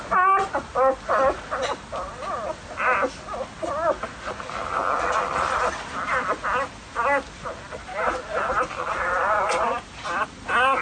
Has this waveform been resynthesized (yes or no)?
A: no